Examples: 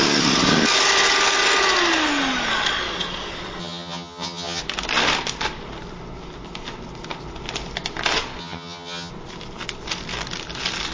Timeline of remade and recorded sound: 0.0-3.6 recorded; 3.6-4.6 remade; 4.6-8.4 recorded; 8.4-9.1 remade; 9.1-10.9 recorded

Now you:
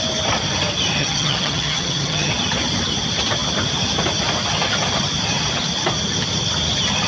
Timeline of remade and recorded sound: 0.0-1.0 recorded; 1.0-2.3 remade; 2.3-7.1 recorded

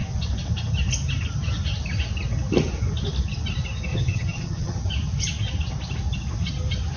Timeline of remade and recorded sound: 0.0-3.9 recorded; 3.9-4.8 remade; 4.8-7.0 recorded